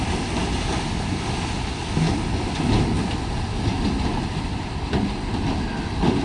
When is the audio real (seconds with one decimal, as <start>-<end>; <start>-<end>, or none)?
0.0-6.2